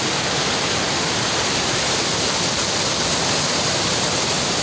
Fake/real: real